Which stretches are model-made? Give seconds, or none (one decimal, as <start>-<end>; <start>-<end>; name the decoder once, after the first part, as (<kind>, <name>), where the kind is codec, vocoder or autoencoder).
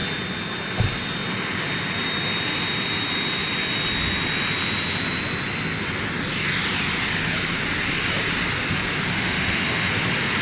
9.1-9.9 (autoencoder, DAC-VAE)